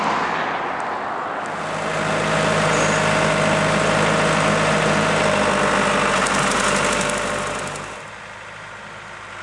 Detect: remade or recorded recorded